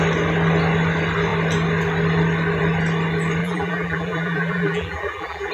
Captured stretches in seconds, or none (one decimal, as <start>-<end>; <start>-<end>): 0.0-3.4